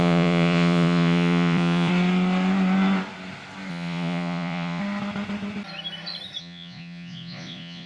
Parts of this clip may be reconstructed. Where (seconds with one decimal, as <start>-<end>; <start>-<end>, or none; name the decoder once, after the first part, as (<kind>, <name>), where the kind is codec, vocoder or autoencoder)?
0.0-1.9 (vocoder, Vocos); 3.7-4.8; 6.4-7.9